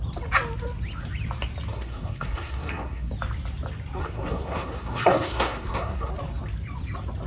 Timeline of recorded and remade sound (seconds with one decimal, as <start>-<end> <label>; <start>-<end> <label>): 0.0-1.7 recorded; 1.7-3.1 remade; 3.1-4.0 recorded; 4.0-6.1 remade; 6.1-7.3 recorded